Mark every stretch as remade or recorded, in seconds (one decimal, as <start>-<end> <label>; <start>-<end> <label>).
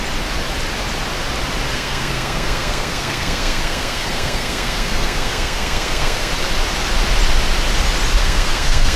0.0-1.7 recorded; 1.7-6.3 remade; 6.3-8.2 recorded; 8.2-9.0 remade